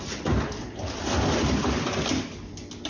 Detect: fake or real real